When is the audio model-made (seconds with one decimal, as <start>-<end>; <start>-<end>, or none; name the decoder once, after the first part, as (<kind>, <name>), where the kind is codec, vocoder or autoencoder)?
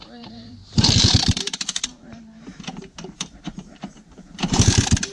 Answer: 0.0-5.1 (vocoder, BigVGAN v2)